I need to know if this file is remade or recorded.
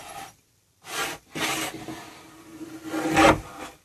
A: recorded